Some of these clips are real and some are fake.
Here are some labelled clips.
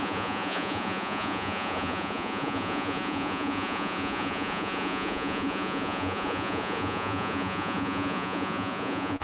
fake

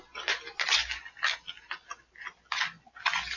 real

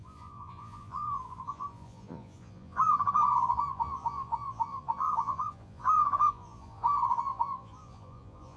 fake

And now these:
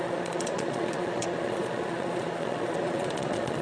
fake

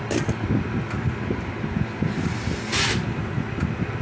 real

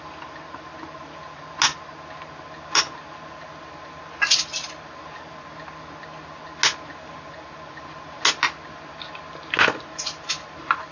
real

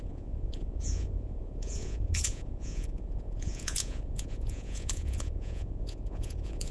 fake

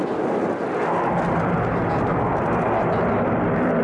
real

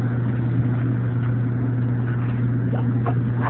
real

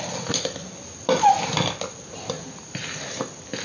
real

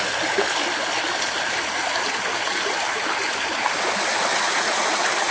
real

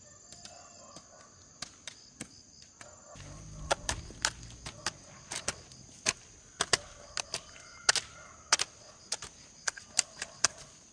real